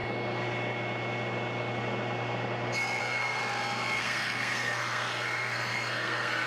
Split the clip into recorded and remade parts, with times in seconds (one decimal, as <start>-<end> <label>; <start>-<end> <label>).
0.0-3.0 recorded; 3.0-3.4 remade; 3.4-4.0 recorded; 4.0-6.5 remade